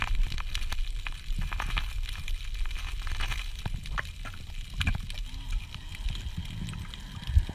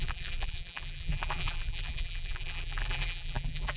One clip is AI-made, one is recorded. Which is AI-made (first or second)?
second